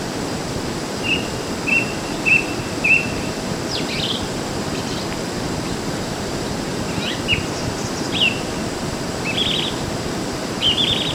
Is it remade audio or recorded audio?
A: recorded